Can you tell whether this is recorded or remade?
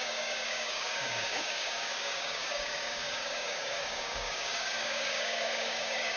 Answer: remade